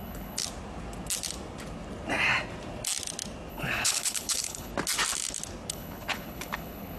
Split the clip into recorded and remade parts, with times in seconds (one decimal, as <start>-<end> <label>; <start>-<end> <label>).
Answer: 0.0-0.4 remade; 0.4-3.5 recorded; 3.5-4.7 remade; 4.7-5.7 recorded; 5.7-7.0 remade